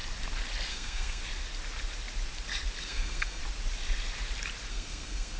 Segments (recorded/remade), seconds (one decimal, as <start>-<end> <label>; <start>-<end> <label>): 0.0-0.7 recorded; 0.7-1.2 remade; 1.2-2.8 recorded; 2.8-3.4 remade; 3.4-4.7 recorded; 4.7-5.4 remade